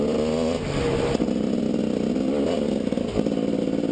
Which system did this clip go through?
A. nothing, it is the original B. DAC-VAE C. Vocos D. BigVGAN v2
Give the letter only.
A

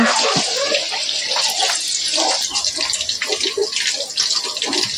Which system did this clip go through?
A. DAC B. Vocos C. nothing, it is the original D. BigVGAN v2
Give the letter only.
C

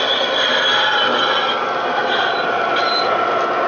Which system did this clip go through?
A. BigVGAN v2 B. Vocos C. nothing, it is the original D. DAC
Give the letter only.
C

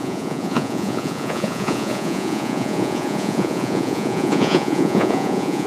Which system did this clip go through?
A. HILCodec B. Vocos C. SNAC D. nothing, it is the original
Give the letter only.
B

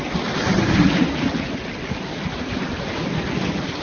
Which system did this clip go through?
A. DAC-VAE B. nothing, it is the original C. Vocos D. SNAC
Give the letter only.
B